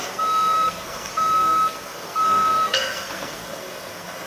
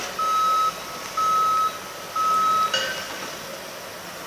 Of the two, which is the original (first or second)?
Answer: second